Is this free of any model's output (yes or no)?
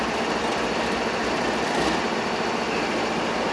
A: yes